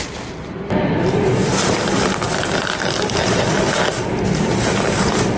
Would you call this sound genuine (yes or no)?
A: yes